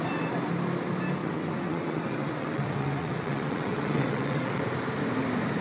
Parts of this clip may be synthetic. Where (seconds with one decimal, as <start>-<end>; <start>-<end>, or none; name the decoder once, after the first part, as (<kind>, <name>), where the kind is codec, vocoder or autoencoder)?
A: 1.2-4.6 (vocoder, WaveNeXt)